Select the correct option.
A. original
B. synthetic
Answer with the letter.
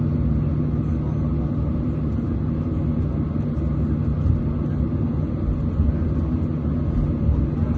A